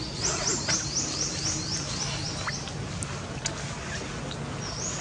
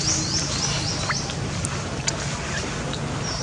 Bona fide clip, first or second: first